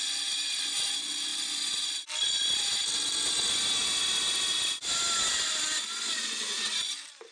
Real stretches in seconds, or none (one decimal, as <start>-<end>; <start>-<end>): 0.0-7.3